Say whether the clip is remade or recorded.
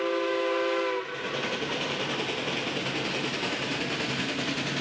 recorded